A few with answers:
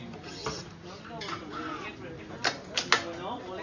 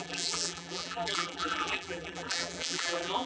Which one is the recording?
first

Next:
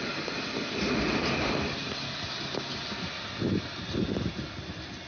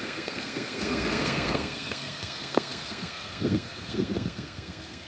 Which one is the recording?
first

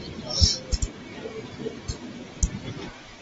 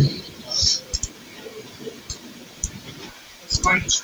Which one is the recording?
first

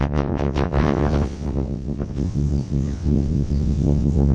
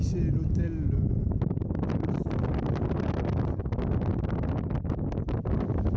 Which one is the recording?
second